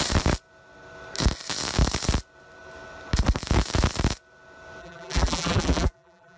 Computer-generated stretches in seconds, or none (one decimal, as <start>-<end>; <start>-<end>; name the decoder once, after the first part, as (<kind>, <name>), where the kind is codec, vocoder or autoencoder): 4.8-6.4 (vocoder, BigVGAN v2)